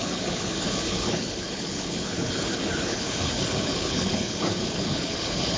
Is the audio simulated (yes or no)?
yes